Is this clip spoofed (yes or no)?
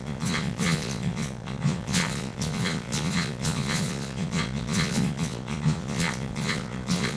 yes